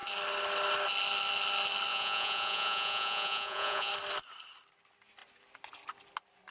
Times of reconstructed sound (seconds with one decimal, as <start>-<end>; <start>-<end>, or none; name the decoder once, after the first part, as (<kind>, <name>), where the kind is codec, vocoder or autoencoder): 1.9-3.9 (vocoder, Vocos)